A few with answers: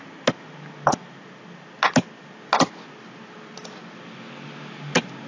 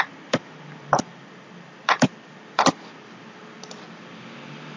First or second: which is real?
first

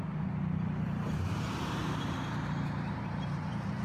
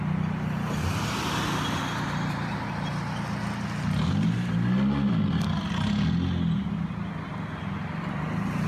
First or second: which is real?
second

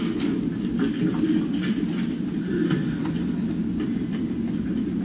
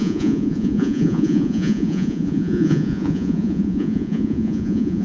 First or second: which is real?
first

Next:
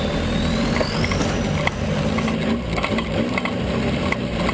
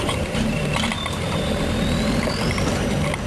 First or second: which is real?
first